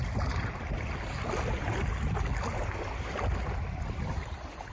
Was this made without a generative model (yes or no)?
yes